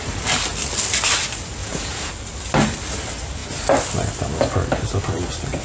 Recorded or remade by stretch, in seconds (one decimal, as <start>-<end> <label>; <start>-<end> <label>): 0.0-1.6 recorded; 1.6-2.1 remade; 2.1-5.6 recorded